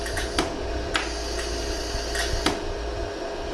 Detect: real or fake real